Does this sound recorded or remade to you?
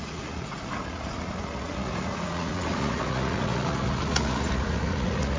remade